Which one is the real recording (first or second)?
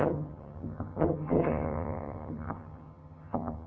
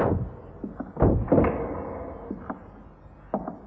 second